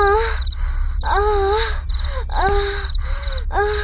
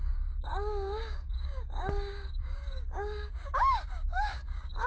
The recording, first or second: first